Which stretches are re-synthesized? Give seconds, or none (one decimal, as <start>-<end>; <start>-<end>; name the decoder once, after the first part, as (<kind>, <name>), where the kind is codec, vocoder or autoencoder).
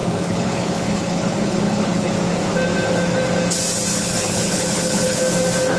0.0-2.1 (codec, HILCodec); 3.9-5.2